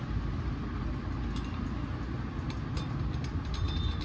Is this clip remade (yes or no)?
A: no